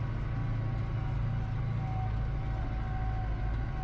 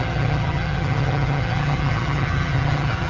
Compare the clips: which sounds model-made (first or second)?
second